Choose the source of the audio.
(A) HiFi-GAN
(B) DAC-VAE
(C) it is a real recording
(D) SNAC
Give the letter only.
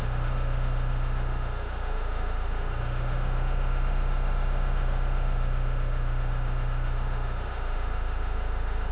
B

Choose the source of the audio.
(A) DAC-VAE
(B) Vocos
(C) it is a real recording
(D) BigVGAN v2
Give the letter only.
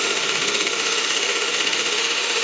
A